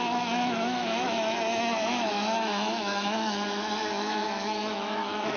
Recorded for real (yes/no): no